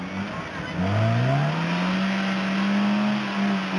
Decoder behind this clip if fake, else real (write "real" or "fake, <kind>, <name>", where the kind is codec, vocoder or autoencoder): real